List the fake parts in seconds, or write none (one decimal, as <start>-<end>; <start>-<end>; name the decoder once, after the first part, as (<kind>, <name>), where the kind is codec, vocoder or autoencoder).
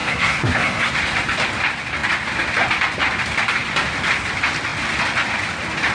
0.0-0.9 (codec, SNAC)